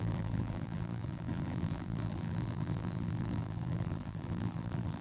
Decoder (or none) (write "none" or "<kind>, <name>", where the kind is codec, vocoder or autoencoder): vocoder, BigVGAN v2